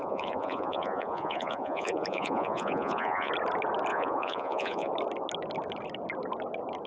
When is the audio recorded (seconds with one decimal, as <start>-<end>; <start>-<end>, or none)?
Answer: 3.3-3.9; 4.9-6.9